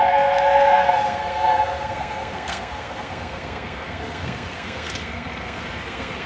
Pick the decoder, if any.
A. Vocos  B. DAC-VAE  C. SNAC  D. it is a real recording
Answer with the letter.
C